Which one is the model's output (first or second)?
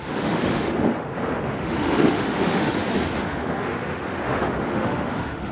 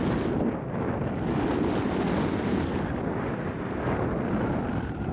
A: first